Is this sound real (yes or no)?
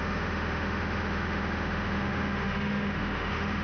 no